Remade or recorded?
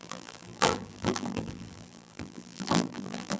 remade